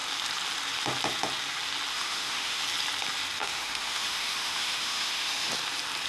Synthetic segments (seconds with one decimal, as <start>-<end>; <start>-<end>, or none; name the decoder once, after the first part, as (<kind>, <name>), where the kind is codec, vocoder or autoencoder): 1.9-2.6 (autoencoder, DAC-VAE); 3.4-5.5